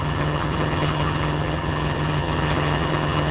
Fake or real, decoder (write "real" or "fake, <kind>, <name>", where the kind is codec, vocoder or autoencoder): fake, vocoder, HiFi-GAN